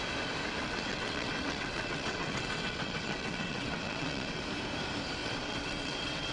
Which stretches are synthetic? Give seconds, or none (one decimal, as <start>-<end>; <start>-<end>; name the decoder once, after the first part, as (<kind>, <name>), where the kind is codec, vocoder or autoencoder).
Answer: 0.6-4.4 (vocoder, WaveNeXt); 5.2-6.3